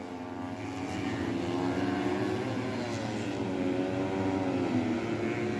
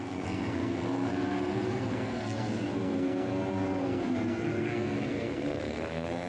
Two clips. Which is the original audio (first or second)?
first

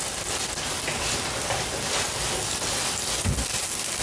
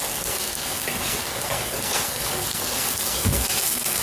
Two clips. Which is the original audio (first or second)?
first